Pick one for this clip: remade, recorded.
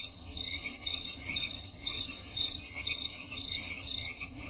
remade